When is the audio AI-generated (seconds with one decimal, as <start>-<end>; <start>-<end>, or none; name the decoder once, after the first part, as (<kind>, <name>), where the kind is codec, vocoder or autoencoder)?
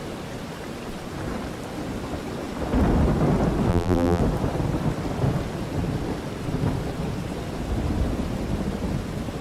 3.7-4.2 (vocoder, BigVGAN v2)